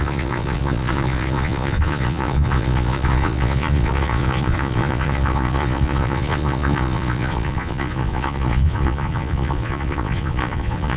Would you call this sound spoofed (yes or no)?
yes